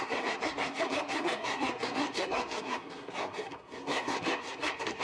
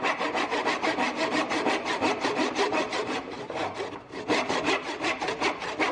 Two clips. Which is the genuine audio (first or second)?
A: second